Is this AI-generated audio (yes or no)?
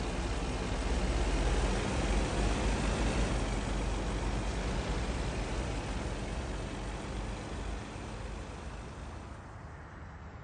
no